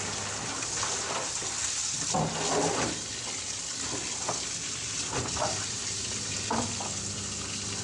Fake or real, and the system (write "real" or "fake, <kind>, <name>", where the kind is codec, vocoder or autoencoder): real